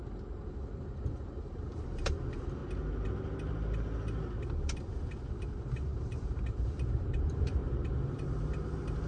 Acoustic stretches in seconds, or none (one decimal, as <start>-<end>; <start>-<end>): 2.6-5.3; 7.6-9.1